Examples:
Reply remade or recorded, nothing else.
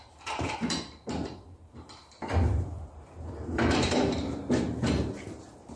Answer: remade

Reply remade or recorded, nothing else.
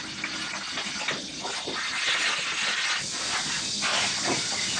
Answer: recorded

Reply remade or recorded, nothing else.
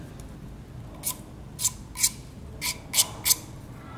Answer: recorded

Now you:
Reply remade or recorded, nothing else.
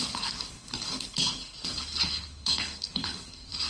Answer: remade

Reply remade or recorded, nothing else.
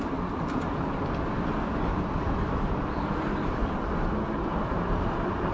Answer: recorded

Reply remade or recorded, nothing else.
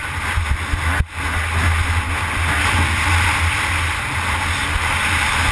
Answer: recorded